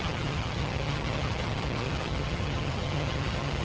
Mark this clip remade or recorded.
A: remade